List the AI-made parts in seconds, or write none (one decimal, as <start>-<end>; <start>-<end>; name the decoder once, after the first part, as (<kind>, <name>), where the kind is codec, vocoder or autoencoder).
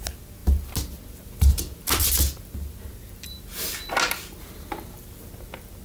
none